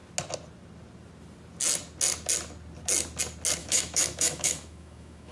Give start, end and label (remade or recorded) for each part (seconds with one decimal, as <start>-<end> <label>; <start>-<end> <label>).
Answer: 0.0-3.6 recorded; 3.6-5.3 remade